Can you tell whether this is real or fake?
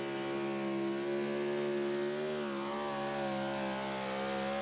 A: real